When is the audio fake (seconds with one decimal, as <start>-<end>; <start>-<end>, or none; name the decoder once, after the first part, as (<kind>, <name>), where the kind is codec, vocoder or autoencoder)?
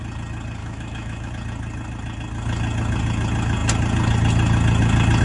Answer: 0.6-1.3 (autoencoder, DAC-VAE)